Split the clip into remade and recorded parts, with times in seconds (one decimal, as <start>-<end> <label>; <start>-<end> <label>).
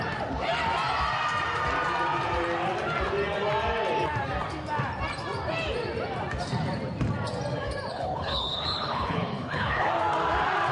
0.0-7.9 recorded; 7.9-9.9 remade; 9.9-10.7 recorded